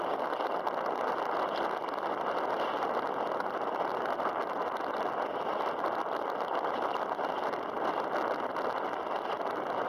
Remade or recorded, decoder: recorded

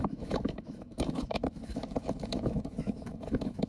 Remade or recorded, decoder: remade, autoencoder, DAC-VAE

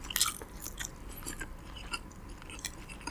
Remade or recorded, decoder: recorded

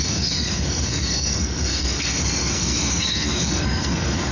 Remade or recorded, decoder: remade, codec, SNAC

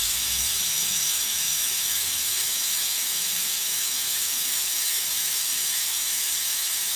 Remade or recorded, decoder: remade, autoencoder, DAC-VAE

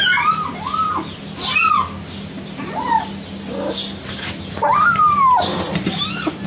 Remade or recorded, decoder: recorded